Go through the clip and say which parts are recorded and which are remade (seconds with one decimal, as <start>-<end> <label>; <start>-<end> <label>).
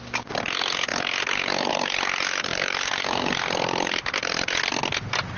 0.0-2.5 recorded; 2.5-3.3 remade; 3.3-5.4 recorded